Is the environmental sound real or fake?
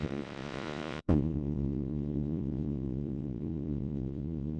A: fake